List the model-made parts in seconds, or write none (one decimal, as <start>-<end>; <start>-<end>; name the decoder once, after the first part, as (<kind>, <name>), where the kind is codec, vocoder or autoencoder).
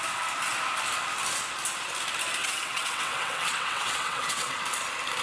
2.4-4.6 (vocoder, WaveNeXt)